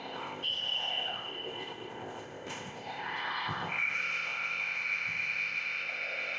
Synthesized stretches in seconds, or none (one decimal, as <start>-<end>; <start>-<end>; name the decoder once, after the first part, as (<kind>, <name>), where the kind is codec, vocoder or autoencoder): 0.0-6.4 (codec, ZipCodec)